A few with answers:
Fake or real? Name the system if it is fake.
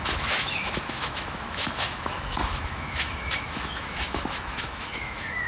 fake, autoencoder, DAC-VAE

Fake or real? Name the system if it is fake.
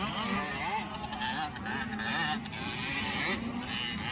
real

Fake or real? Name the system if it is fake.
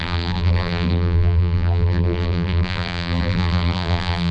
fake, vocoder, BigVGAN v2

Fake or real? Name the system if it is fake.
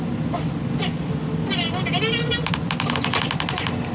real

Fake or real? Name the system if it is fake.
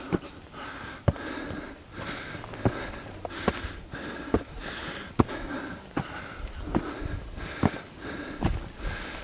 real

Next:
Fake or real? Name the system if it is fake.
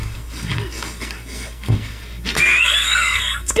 fake, codec, SNAC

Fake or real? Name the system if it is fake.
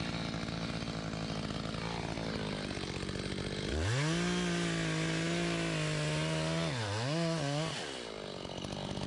real